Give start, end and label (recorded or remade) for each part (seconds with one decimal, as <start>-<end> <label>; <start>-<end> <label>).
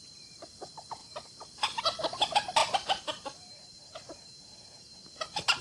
0.0-1.0 recorded; 1.0-1.8 remade; 1.8-2.6 recorded; 2.6-5.6 remade